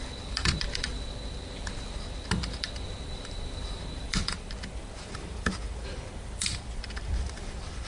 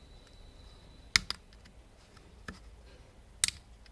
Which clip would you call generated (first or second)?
first